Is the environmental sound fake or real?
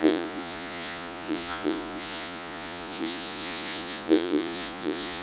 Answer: fake